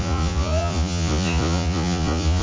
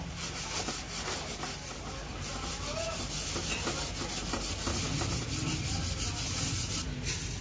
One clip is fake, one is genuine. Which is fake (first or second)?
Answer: first